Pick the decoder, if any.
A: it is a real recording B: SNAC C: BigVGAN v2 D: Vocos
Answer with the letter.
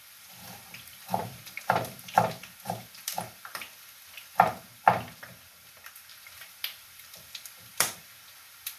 C